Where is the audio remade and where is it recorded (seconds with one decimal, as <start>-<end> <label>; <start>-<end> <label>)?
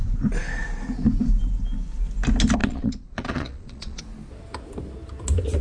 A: 0.0-2.6 recorded; 2.6-4.0 remade; 4.0-5.6 recorded